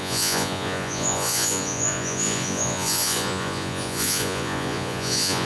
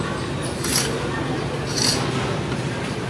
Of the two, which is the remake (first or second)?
first